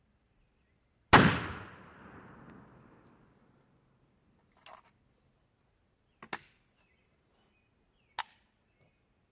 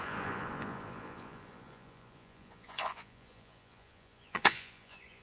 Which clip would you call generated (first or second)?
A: second